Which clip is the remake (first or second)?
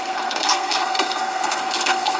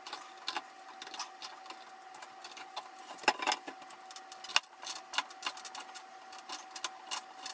first